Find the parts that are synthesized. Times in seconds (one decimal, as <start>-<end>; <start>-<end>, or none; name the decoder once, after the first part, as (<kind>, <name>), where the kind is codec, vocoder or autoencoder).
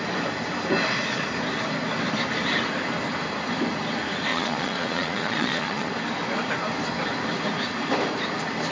4.3-5.9 (vocoder, Vocos)